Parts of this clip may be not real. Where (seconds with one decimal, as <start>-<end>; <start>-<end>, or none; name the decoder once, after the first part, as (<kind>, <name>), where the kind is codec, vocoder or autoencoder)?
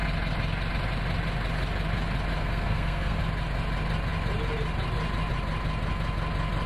2.4-3.2 (codec, SNAC)